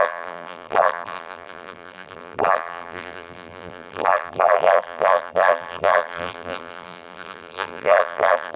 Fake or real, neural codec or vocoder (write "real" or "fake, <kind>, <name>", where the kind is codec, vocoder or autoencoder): fake, vocoder, BigVGAN v2